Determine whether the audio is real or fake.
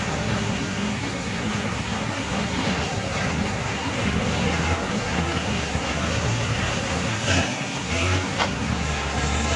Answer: fake